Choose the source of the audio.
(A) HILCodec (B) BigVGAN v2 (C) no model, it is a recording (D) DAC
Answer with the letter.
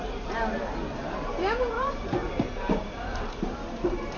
C